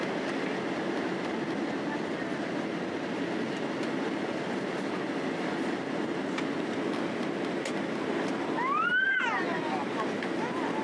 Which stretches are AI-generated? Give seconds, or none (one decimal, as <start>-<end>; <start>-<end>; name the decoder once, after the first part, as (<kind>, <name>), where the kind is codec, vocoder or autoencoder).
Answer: none